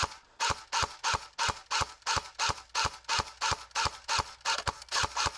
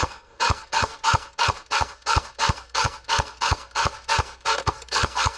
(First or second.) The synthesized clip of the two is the second